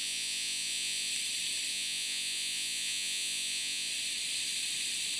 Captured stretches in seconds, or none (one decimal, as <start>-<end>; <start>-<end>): 1.1-1.7; 3.9-5.2